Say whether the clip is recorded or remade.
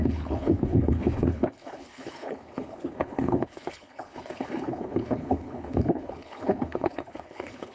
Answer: remade